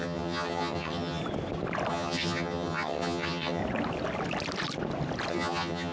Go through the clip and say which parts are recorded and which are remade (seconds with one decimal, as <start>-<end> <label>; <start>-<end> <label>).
0.0-1.2 remade; 1.2-1.9 recorded; 1.9-3.6 remade; 3.6-5.3 recorded; 5.3-5.9 remade